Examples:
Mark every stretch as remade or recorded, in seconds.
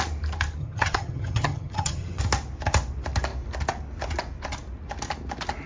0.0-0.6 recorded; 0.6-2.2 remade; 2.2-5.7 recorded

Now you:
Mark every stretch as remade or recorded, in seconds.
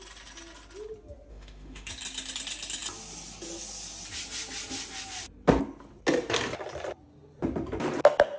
0.0-1.3 recorded; 1.3-1.9 remade; 1.9-8.4 recorded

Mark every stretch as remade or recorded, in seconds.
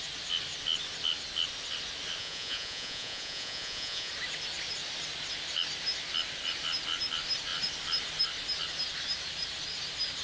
0.0-2.2 recorded; 2.2-4.1 remade; 4.1-10.2 recorded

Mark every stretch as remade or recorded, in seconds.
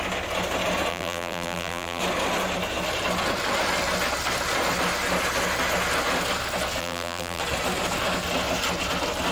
0.0-0.9 recorded; 0.9-2.0 remade; 2.0-6.8 recorded; 6.8-7.4 remade; 7.4-9.3 recorded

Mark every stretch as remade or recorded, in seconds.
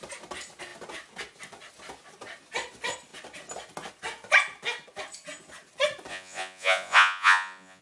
0.0-6.1 recorded; 6.1-7.8 remade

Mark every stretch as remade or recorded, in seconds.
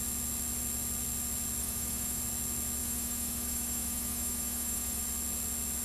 0.0-1.6 recorded; 1.6-2.2 remade; 2.2-2.8 recorded; 2.8-5.0 remade; 5.0-5.8 recorded